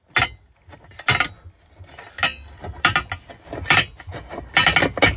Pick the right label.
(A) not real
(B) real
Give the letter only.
B